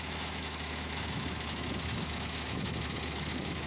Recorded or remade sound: remade